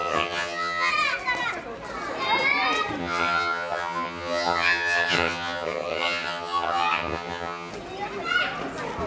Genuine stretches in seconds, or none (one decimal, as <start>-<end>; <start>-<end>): 0.9-3.0; 7.7-9.1